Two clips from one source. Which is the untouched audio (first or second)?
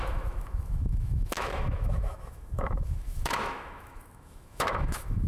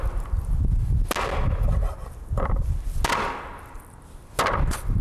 second